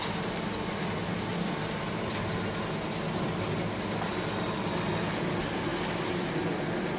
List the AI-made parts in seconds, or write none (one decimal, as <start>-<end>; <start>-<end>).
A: none